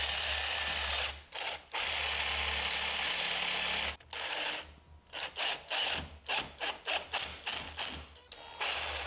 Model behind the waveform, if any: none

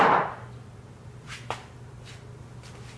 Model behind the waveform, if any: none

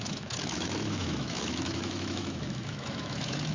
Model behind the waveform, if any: autoencoder, DAC-VAE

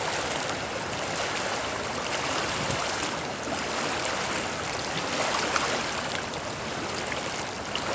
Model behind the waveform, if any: none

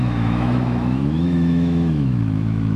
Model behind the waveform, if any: autoencoder, DAC-VAE